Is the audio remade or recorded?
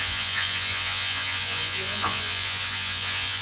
remade